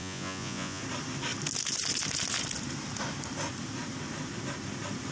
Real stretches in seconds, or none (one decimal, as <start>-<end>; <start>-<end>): 0.8-5.1